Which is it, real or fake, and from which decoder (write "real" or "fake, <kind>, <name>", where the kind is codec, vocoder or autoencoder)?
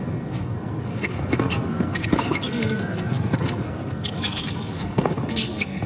fake, codec, SNAC